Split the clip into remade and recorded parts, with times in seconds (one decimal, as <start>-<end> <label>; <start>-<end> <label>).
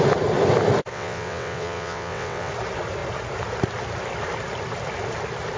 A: 0.0-0.9 recorded; 0.9-2.5 remade; 2.5-5.6 recorded